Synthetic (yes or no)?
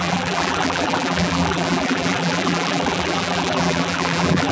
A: yes